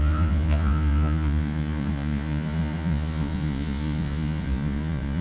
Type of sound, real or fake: fake